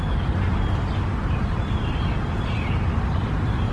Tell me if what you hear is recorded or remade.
recorded